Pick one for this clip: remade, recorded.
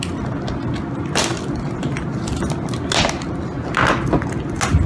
recorded